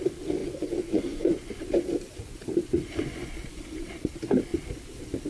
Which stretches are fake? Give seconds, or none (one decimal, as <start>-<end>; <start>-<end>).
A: 0.4-1.4; 2.7-3.6